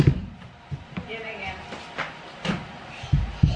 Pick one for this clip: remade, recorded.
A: recorded